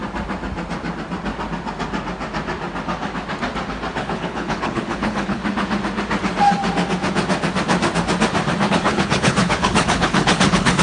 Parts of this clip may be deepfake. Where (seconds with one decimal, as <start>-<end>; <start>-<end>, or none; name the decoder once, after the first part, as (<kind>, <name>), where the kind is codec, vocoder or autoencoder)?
4.0-5.4 (codec, HILCodec); 8.7-10.8